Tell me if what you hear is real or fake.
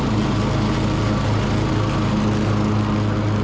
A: real